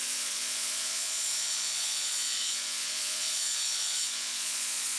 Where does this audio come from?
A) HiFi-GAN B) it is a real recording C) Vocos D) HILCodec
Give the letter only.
C